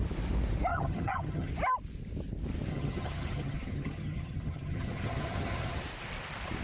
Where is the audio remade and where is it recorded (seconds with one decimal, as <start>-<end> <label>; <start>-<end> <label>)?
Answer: 0.0-0.7 recorded; 0.7-1.5 remade; 1.5-2.7 recorded; 2.7-5.8 remade; 5.8-6.6 recorded